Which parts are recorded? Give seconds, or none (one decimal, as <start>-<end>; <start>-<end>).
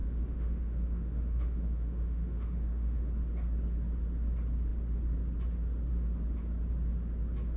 3.1-7.6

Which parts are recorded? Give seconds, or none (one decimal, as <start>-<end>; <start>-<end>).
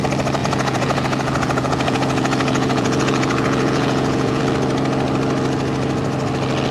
0.0-0.4; 4.4-6.7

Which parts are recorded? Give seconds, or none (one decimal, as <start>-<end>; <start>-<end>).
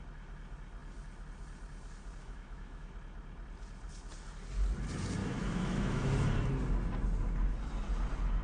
0.0-2.2; 2.9-5.2; 6.1-8.4